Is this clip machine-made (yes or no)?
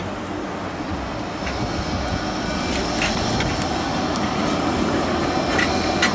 no